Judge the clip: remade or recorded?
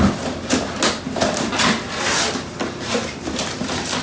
recorded